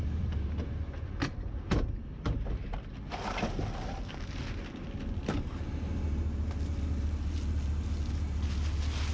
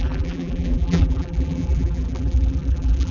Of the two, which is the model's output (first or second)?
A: second